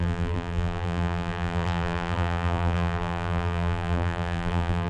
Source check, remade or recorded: remade